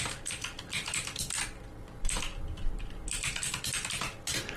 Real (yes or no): yes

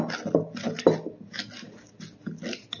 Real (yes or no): yes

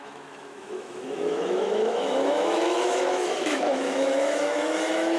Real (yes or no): no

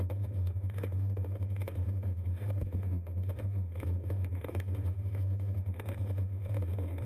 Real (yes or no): no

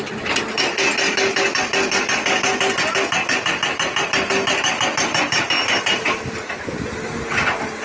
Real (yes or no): yes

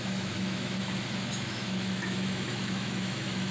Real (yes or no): no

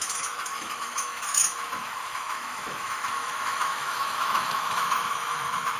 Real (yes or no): no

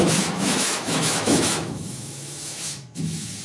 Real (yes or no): no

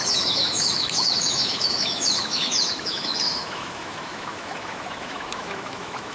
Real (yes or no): no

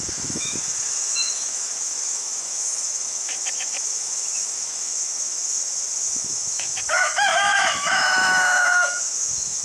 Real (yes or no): no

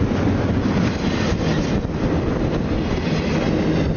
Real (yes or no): yes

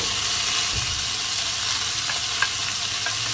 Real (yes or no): yes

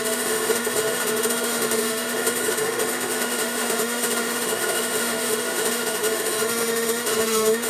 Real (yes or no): no